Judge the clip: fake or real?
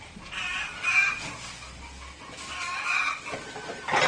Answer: real